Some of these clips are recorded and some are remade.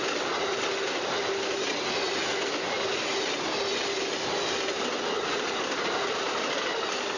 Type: recorded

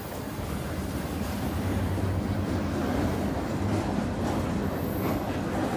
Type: recorded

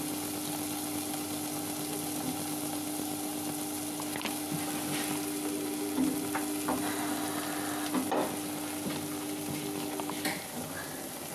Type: recorded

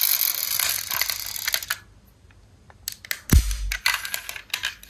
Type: recorded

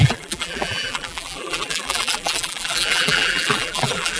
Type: remade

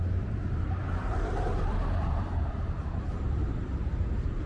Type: remade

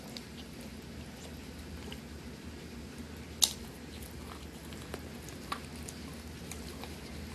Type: recorded